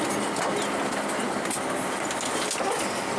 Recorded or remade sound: recorded